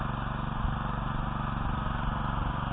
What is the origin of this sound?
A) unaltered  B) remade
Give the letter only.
A